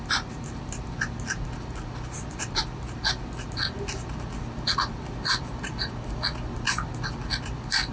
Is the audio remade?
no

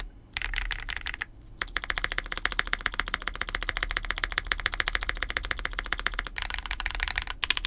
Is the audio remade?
no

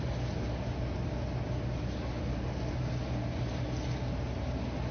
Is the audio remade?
no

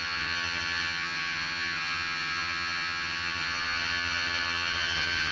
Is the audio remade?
yes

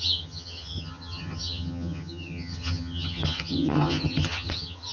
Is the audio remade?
yes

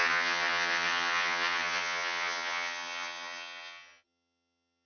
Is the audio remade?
yes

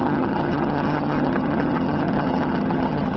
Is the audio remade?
yes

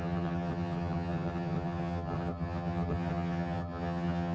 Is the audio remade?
yes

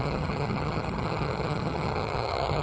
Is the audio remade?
yes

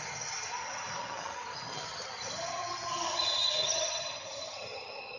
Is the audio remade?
yes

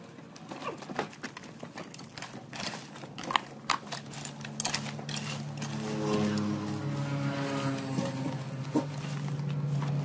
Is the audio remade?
no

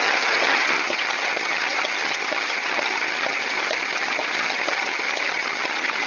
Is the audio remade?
yes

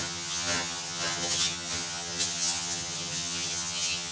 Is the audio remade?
yes